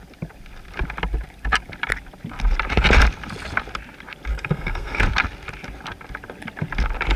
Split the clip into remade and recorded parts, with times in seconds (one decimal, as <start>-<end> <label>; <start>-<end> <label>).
0.0-4.3 recorded; 4.3-5.0 remade; 5.0-7.2 recorded